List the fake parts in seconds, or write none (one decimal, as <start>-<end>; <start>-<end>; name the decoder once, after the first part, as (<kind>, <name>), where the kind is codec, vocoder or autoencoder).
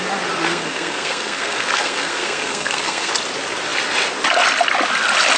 0.5-3.1 (codec, SNAC)